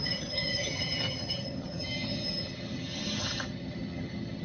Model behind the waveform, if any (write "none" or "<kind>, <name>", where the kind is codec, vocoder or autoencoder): vocoder, HiFi-GAN